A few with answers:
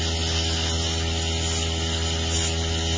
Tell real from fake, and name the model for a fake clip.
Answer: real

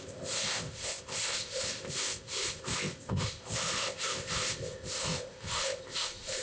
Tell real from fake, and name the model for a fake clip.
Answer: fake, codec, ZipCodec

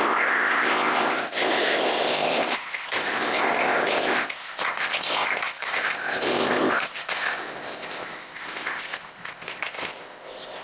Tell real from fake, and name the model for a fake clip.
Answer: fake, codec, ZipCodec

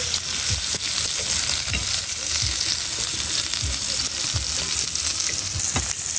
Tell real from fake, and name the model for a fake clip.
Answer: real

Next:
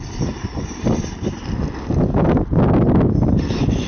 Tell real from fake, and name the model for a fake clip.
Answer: real